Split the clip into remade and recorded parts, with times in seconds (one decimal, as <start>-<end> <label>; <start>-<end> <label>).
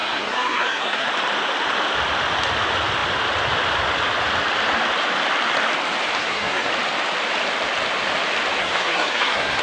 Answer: 0.0-1.1 remade; 1.1-6.2 recorded; 6.2-6.7 remade; 6.7-8.6 recorded; 8.6-9.6 remade